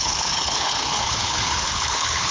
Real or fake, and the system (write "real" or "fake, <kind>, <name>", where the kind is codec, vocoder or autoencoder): fake, codec, HILCodec